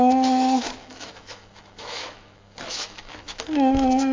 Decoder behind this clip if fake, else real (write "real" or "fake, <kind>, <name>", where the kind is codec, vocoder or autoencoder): fake, autoencoder, DAC-VAE